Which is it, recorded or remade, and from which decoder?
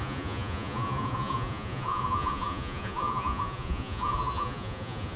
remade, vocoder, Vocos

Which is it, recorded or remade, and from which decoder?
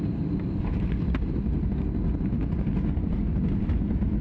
recorded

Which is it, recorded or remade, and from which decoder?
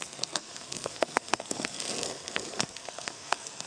remade, codec, SNAC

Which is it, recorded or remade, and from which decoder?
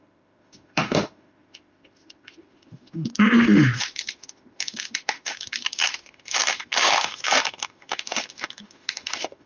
remade, autoencoder, DAC-VAE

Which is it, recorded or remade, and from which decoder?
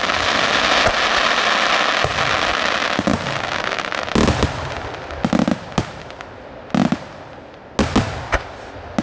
recorded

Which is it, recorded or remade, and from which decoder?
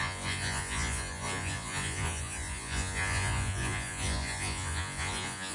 remade, vocoder, Vocos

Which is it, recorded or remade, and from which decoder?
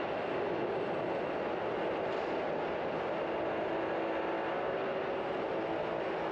recorded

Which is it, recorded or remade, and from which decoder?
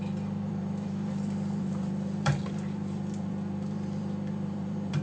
remade, vocoder, BigVGAN v2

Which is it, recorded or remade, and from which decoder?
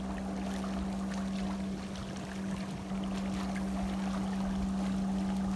recorded